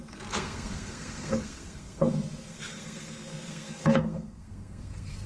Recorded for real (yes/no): no